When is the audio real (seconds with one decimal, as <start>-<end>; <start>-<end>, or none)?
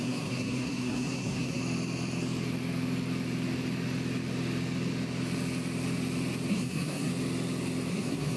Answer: 1.6-6.5; 7.1-7.9